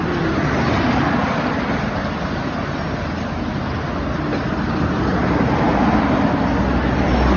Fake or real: real